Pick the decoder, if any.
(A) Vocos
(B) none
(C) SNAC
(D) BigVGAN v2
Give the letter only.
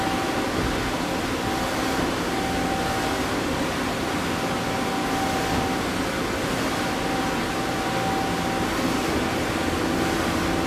B